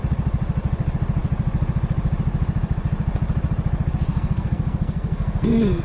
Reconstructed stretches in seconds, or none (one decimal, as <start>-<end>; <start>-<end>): 4.1-5.8